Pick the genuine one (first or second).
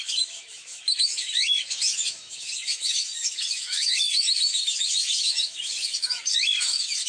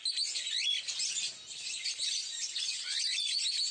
second